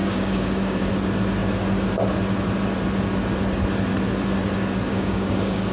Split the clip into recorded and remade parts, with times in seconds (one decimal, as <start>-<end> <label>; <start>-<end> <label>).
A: 0.0-0.9 remade; 0.9-4.9 recorded; 4.9-5.7 remade